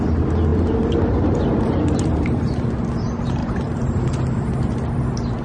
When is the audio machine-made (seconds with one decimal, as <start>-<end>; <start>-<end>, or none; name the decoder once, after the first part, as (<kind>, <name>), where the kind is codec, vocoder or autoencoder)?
none